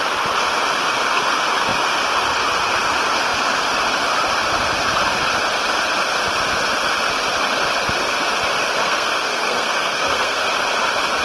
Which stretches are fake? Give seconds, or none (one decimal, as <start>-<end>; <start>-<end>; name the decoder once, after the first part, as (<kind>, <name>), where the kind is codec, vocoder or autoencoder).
8.8-10.5 (codec, SNAC)